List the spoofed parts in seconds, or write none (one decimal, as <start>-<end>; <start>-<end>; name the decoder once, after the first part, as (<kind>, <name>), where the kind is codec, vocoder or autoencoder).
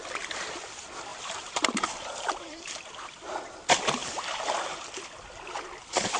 1.1-2.9 (vocoder, BigVGAN v2)